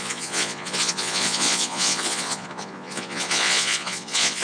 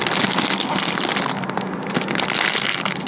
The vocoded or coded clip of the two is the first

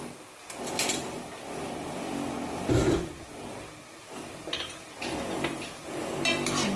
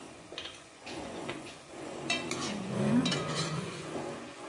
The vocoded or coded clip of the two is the second